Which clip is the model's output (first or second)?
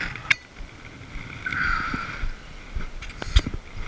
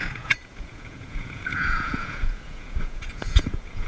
second